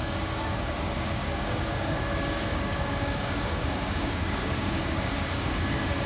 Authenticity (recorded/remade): remade